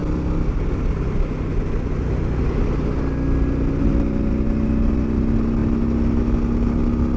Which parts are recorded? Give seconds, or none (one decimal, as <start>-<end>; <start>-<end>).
0.0-7.2